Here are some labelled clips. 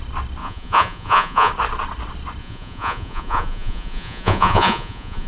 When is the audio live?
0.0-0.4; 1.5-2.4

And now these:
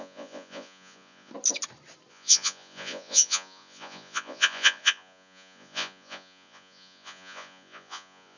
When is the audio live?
1.3-2.1

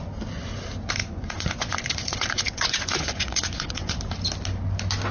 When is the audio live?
0.0-1.0; 4.0-5.1

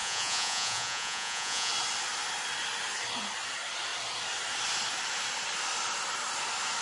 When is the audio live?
1.7-6.8

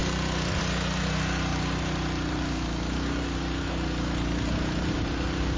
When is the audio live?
0.0-5.6

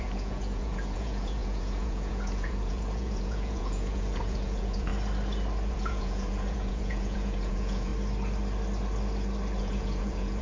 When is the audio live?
4.9-5.7; 7.9-9.6

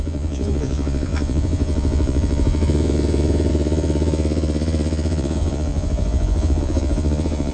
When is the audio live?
none

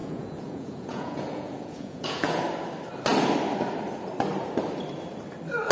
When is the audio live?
2.4-5.7